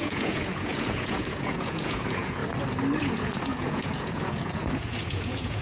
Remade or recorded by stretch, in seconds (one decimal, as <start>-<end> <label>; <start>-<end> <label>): 0.0-2.4 remade; 2.4-3.0 recorded; 3.0-5.6 remade